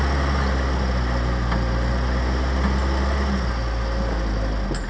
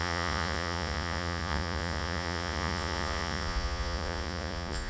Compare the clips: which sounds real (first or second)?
first